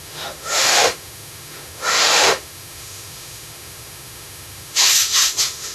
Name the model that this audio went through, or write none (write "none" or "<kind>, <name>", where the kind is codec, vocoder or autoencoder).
autoencoder, DAC-VAE